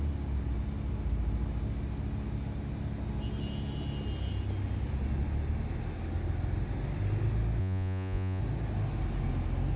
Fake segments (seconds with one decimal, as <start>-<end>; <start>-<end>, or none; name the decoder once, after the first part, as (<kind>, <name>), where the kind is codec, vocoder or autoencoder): 7.6-8.4 (vocoder, Vocos)